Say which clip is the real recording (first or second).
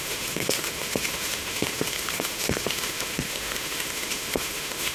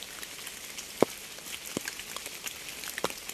second